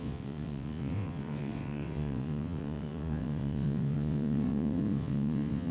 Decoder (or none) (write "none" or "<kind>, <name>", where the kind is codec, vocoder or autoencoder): vocoder, WaveNeXt